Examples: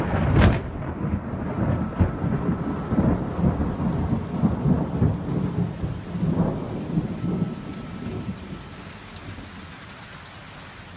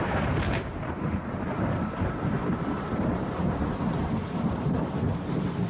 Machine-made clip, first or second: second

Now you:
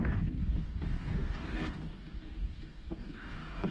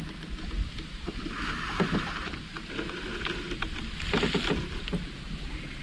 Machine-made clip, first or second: first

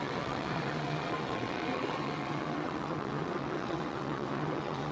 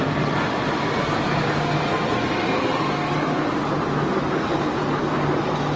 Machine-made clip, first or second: first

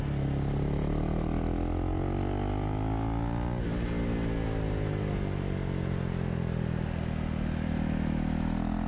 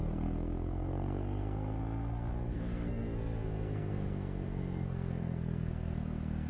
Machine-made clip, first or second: second